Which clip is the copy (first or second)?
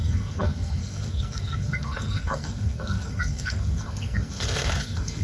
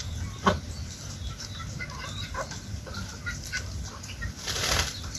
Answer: first